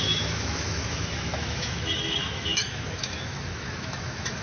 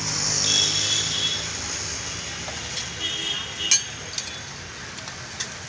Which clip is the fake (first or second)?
first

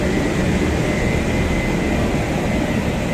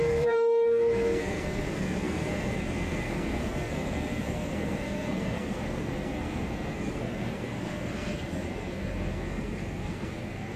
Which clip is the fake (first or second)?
second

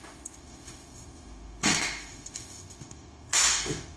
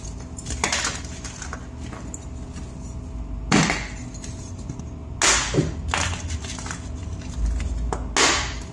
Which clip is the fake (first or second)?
first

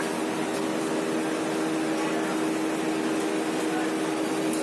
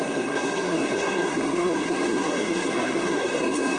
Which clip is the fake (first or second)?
second